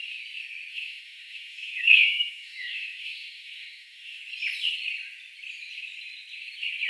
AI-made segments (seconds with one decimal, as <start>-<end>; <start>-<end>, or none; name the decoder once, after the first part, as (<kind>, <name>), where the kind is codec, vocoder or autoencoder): 0.7-4.2 (autoencoder, DAC-VAE)